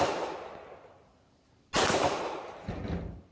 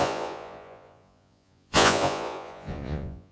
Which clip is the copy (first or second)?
second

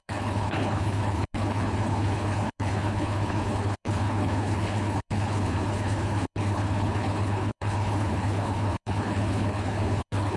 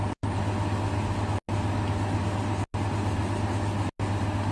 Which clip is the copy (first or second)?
first